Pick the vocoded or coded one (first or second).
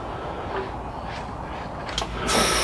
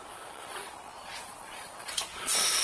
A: second